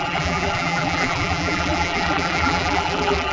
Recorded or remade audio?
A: remade